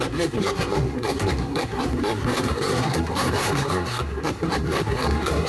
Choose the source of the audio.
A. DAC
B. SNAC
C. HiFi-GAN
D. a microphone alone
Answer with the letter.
B